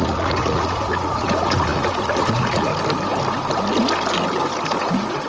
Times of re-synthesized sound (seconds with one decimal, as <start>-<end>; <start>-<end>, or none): 0.0-2.7; 4.8-5.3